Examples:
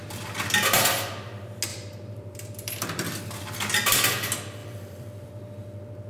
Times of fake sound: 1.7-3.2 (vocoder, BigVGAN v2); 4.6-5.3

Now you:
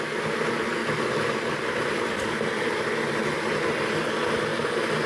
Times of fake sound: 0.8-2.4 (vocoder, BigVGAN v2); 3.2-3.8; 4.5-5.1

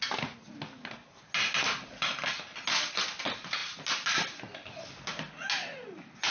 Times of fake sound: none

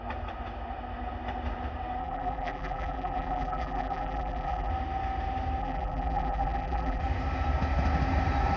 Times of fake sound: 2.0-4.7 (vocoder, BigVGAN v2); 5.6-7.0

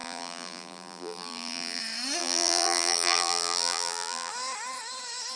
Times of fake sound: 0.0-1.8 (vocoder, BigVGAN v2); 2.2-4.3